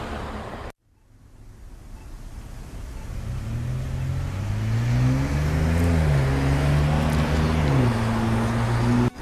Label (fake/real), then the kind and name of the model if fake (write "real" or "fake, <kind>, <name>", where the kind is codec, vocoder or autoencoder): real